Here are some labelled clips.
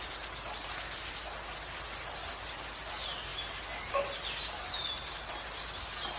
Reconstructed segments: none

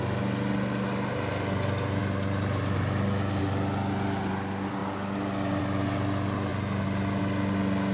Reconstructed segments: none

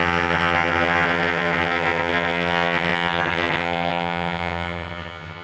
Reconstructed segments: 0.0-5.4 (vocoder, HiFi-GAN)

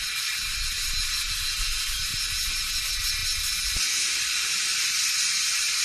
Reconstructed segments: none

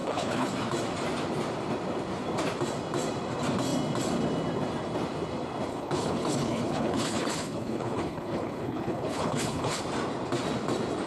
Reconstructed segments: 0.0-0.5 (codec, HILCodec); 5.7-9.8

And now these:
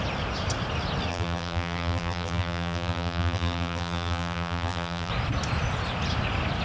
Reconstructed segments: 1.1-5.1 (vocoder, BigVGAN v2)

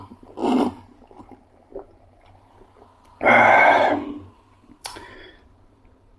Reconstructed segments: 0.0-0.4 (vocoder, BigVGAN v2); 1.2-6.2

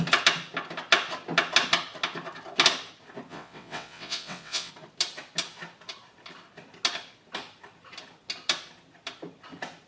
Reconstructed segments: 3.3-4.7 (vocoder, WaveNeXt)